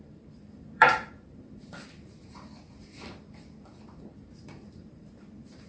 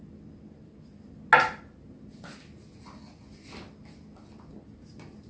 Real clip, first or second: second